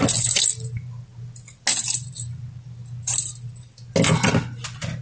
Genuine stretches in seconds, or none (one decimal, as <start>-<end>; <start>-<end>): 0.0-5.0